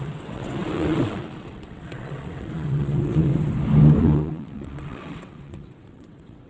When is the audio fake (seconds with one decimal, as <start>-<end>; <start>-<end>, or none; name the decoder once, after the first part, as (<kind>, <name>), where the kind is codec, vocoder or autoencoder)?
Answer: 0.0-3.3 (vocoder, WaveNeXt); 4.0-6.5